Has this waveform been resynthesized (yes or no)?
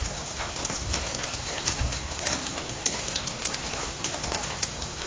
yes